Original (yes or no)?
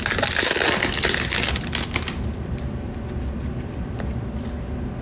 yes